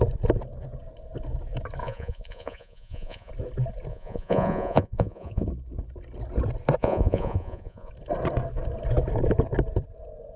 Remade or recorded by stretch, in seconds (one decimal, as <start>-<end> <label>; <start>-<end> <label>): 0.0-1.8 recorded; 1.8-3.3 remade; 3.3-3.9 recorded; 3.9-5.5 remade; 5.5-6.8 recorded; 6.8-7.9 remade; 7.9-10.4 recorded